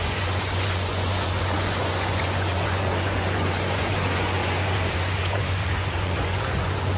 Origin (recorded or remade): remade